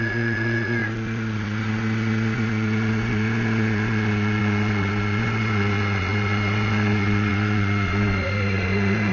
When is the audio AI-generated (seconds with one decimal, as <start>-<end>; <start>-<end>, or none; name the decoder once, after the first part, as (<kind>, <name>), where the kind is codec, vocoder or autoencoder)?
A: 0.0-9.1 (vocoder, Vocos)